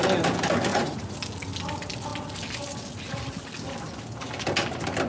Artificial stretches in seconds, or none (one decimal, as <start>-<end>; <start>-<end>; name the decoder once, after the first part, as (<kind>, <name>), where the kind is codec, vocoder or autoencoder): 0.7-1.2 (vocoder, Vocos)